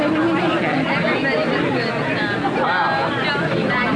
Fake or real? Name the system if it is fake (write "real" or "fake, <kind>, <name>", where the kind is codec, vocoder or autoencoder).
real